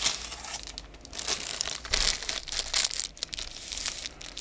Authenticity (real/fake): real